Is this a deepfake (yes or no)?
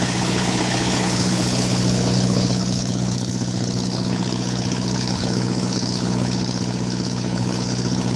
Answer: yes